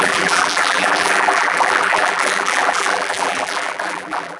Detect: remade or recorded remade